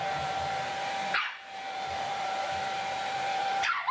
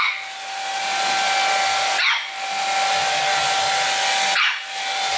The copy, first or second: first